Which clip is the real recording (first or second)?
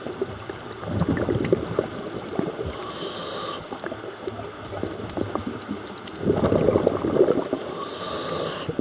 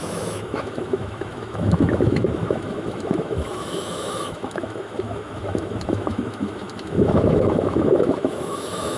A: first